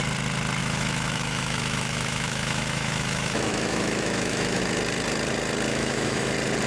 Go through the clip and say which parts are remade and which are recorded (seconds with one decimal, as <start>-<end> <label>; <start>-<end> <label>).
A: 0.0-0.6 recorded; 0.6-4.6 remade; 4.6-5.7 recorded; 5.7-6.3 remade; 6.3-6.7 recorded